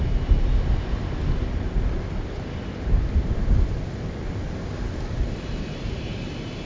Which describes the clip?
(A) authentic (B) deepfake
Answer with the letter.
A